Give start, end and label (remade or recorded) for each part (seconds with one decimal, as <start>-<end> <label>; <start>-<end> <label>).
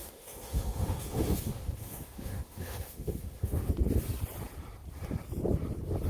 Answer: 0.0-3.7 remade; 3.7-6.1 recorded